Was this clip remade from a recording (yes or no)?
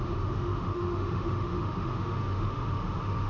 yes